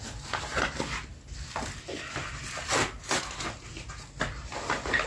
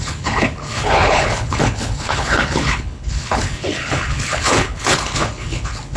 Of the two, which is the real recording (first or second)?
first